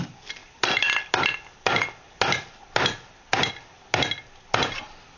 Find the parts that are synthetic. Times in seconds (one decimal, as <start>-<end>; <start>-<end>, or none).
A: none